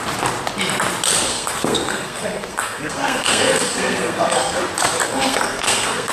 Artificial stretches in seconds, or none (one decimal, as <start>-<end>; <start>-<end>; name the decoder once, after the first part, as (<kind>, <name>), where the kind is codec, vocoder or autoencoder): 1.3-4.6 (codec, SNAC); 5.0-6.1

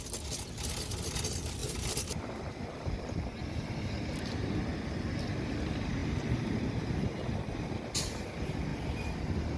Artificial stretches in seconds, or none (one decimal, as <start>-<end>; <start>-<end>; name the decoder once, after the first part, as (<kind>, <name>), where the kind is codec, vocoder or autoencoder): 1.6-3.2 (vocoder, BigVGAN v2)